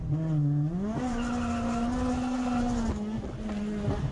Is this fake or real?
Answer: real